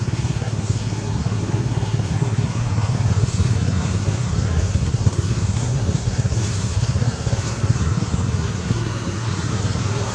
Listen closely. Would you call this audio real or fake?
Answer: fake